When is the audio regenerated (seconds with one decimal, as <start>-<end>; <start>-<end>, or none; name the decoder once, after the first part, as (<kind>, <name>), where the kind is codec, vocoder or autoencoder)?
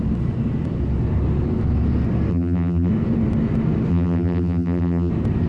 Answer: 2.3-2.9 (vocoder, BigVGAN v2); 3.9-5.1